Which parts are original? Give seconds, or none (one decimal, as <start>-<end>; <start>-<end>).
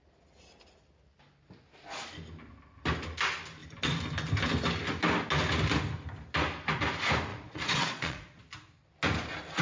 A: 0.0-7.3; 8.4-9.6